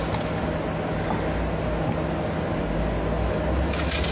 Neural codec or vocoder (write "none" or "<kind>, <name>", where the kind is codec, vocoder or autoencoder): none